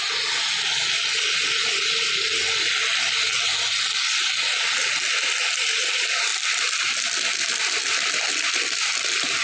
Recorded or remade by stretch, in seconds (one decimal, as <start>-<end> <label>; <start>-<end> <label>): 0.0-9.4 recorded